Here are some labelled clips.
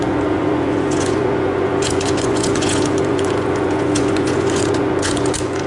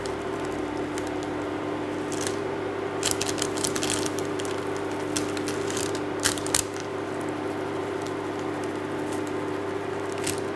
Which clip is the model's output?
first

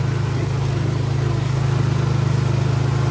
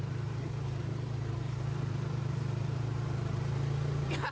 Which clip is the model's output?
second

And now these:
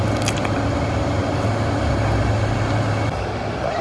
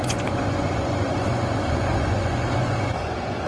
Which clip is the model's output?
second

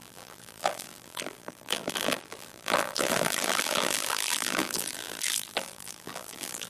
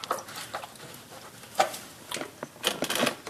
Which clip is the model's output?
first